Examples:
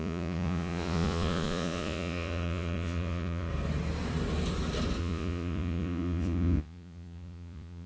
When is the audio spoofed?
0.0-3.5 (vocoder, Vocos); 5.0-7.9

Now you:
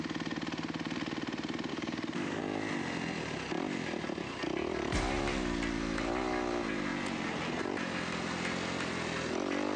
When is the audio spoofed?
1.7-2.4 (codec, DAC)

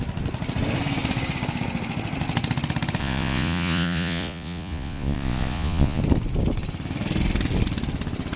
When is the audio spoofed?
3.0-6.0 (vocoder, Vocos)

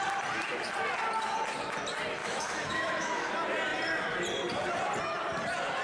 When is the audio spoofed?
2.2-3.3 (autoencoder, DAC-VAE)

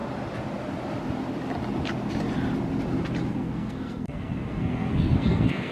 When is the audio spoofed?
3.3-5.7 (codec, SNAC)